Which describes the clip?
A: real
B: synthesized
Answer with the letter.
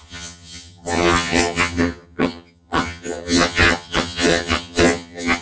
B